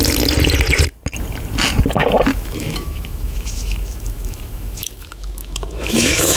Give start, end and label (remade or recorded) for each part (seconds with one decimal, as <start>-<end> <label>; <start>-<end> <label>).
0.0-2.3 recorded; 2.3-6.4 remade